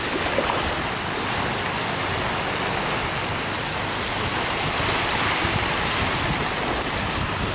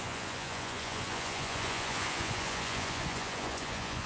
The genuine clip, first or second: first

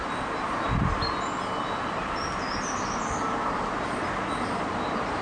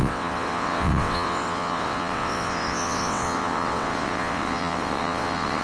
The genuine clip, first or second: first